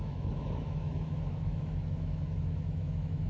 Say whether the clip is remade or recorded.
remade